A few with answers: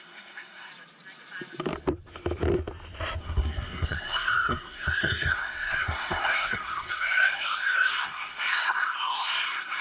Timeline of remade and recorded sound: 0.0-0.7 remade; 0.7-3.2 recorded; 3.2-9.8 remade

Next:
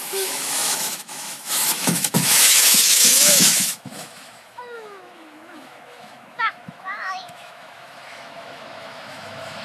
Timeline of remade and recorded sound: 0.0-9.6 remade

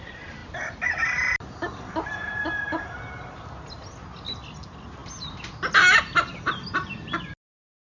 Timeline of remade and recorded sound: 0.0-7.9 recorded

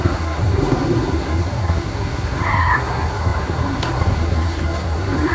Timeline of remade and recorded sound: 0.0-5.3 remade

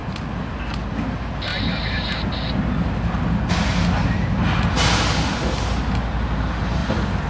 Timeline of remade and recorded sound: 0.0-6.8 recorded; 6.8-7.3 remade